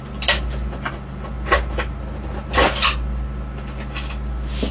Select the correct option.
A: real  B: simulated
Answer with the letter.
A